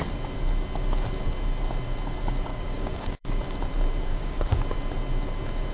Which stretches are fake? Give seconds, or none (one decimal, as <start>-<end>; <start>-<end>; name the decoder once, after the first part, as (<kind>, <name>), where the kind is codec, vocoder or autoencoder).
2.5-3.4 (codec, DAC); 4.1-4.6